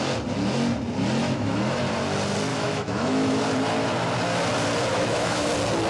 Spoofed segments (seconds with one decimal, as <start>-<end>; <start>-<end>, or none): 1.2-1.8; 2.5-3.4; 4.9-5.5